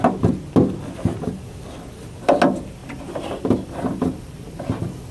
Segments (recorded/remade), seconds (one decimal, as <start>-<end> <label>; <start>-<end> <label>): 0.0-2.8 recorded; 2.8-5.1 remade